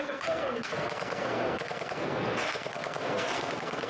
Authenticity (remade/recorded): remade